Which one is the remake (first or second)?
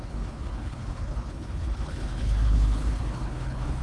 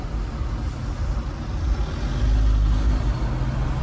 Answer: first